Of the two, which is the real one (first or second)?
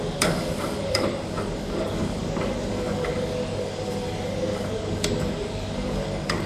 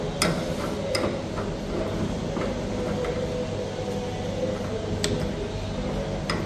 second